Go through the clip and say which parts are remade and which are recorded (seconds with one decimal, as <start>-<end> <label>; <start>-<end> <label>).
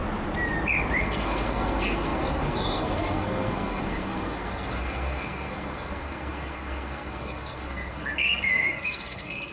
0.0-1.0 recorded; 1.0-9.5 remade